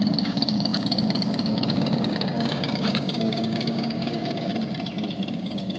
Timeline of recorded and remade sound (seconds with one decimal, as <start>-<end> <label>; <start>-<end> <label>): 0.0-4.5 remade; 4.5-5.3 recorded; 5.3-5.8 remade